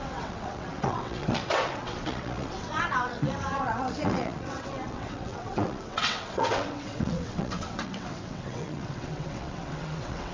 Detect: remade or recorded remade